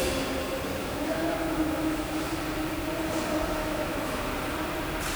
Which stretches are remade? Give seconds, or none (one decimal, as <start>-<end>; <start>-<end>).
0.8-2.3; 3.6-4.2